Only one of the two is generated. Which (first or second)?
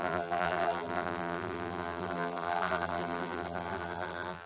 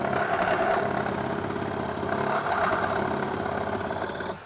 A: first